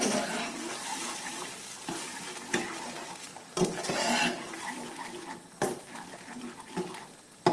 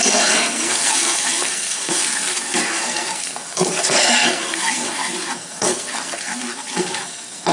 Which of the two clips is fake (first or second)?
second